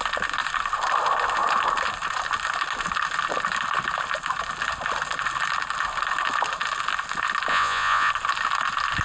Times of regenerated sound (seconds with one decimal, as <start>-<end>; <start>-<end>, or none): 7.5-8.1